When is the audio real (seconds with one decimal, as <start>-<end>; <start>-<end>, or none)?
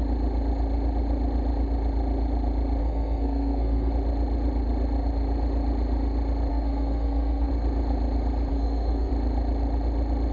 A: 0.0-2.8; 3.9-6.5; 7.5-8.5; 9.1-10.3